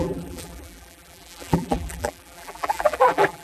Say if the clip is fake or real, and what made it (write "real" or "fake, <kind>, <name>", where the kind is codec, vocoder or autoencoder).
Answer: fake, vocoder, BigVGAN v2